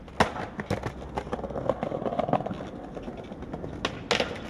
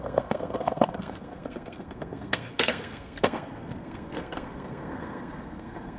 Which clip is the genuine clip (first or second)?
first